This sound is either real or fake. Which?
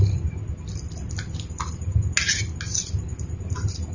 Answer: real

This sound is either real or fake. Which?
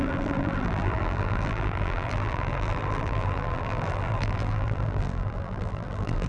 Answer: fake